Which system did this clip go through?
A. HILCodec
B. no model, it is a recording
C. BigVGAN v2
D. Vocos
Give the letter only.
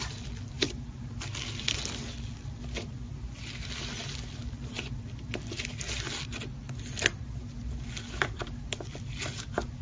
B